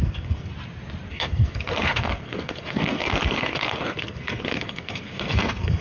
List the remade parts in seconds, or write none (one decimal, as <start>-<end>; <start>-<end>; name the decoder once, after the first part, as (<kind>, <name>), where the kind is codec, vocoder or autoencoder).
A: 0.0-0.5 (codec, SNAC); 1.1-5.8